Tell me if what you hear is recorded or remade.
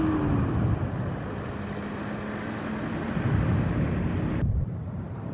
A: recorded